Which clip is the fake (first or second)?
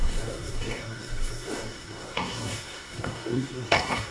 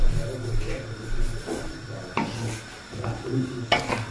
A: first